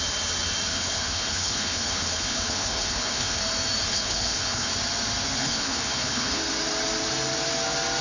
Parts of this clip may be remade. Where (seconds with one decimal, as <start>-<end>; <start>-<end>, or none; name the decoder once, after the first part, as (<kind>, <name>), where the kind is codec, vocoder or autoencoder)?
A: 0.7-3.4 (codec, HILCodec); 3.8-4.7; 5.4-6.4